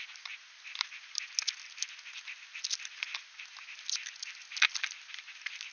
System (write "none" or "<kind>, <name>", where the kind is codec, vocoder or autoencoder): none